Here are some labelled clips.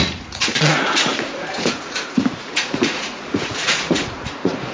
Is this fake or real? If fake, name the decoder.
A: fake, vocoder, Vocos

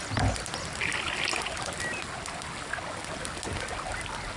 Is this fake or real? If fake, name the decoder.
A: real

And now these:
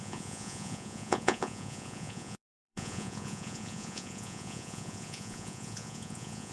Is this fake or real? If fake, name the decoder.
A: fake, vocoder, Vocos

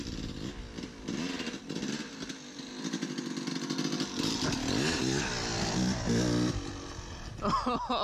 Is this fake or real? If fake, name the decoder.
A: real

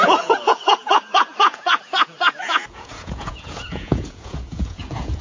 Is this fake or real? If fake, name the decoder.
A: fake, vocoder, Vocos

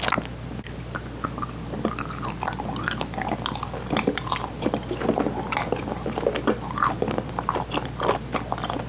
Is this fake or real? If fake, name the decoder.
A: real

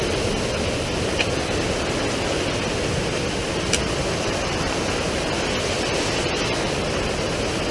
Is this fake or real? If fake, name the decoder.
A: real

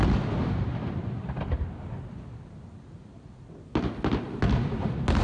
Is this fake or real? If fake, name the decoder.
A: real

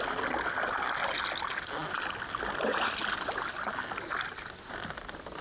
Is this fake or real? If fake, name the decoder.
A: real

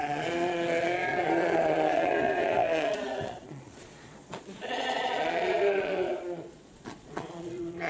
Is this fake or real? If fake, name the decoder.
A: fake, vocoder, Vocos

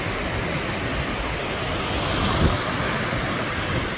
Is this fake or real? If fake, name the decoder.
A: real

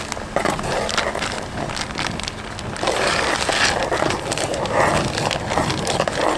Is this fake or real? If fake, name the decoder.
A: real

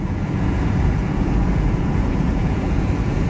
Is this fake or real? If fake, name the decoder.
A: fake, vocoder, Vocos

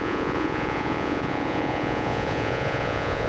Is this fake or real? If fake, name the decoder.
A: fake, vocoder, Vocos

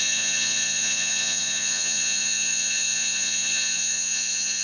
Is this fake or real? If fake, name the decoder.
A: fake, vocoder, Vocos